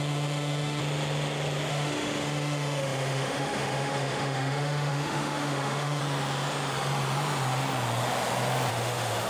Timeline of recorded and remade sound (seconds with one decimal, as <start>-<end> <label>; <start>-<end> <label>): 0.0-0.8 remade; 0.8-1.7 recorded; 1.7-6.0 remade; 6.0-8.7 recorded; 8.7-9.3 remade